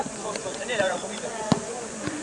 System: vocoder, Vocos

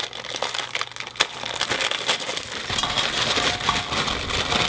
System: none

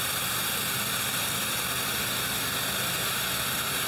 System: none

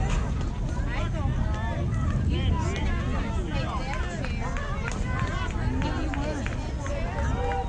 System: none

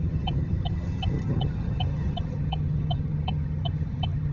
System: vocoder, HiFi-GAN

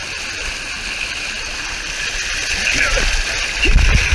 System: none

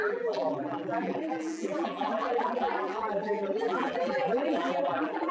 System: vocoder, BigVGAN v2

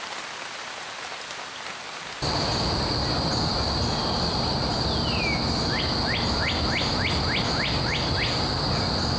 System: none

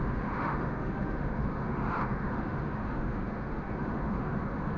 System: autoencoder, DAC-VAE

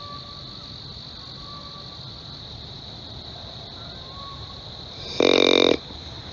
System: none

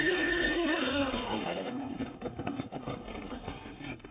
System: codec, SNAC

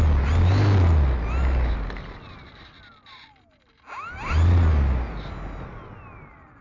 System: none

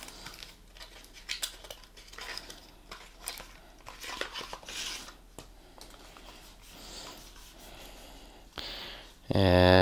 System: none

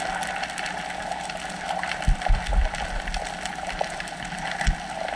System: none